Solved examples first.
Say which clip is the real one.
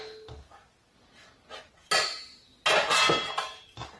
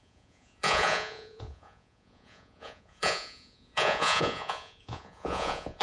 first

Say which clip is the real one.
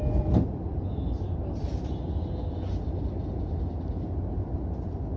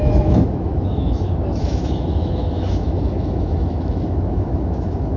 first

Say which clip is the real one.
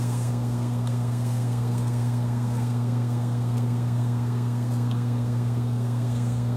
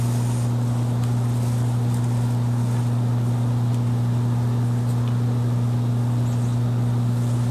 second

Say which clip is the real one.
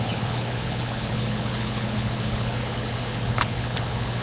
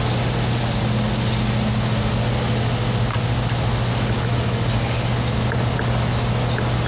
second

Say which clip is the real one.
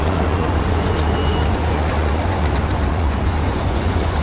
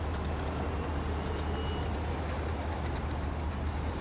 second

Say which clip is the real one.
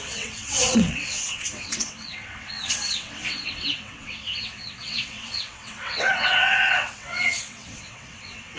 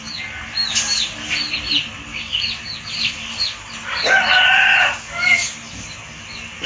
second